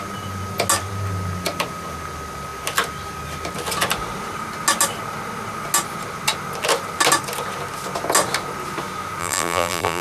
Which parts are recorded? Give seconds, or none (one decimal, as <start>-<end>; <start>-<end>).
0.0-9.2